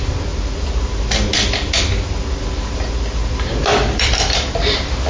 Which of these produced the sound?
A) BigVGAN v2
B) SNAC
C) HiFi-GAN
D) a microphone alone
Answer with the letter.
D